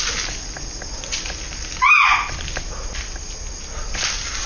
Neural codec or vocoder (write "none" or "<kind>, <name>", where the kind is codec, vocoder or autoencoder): none